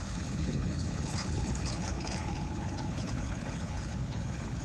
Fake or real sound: fake